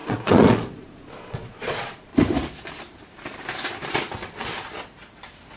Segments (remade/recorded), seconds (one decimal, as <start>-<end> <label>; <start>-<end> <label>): 0.0-2.1 remade; 2.1-5.6 recorded